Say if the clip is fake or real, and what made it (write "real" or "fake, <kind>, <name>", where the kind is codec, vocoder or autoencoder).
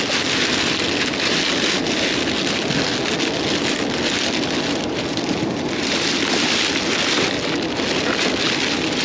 real